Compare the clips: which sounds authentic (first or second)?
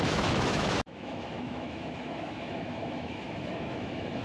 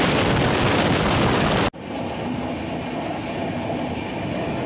second